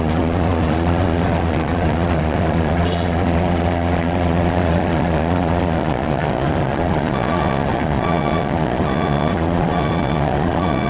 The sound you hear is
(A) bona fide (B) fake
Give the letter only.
B